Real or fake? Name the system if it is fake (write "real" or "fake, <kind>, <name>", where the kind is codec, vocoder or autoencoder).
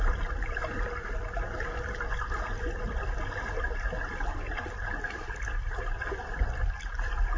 real